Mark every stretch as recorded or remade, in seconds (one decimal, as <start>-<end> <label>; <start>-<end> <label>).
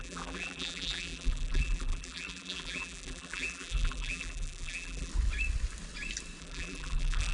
0.0-5.1 remade; 5.1-6.4 recorded; 6.4-7.3 remade